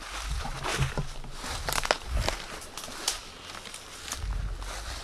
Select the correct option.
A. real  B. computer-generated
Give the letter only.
A